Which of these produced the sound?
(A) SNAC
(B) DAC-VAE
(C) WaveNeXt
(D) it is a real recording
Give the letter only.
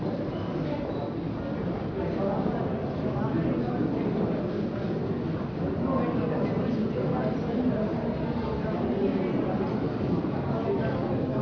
D